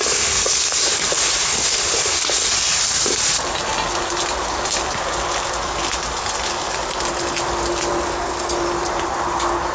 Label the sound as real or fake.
real